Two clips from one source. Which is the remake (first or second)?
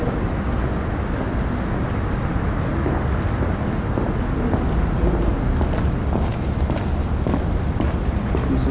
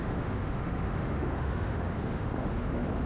second